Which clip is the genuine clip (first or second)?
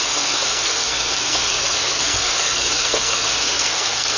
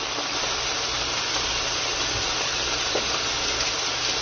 second